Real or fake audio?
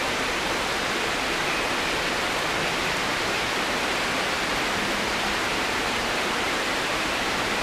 fake